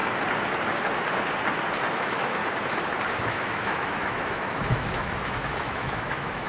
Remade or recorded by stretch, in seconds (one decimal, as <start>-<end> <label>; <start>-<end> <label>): 0.0-1.9 recorded; 1.9-2.4 remade; 2.4-3.2 recorded; 3.2-6.5 remade